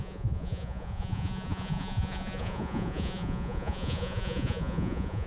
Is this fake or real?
fake